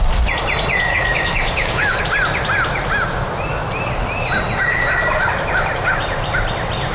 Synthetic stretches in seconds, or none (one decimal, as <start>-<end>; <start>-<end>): 0.9-2.0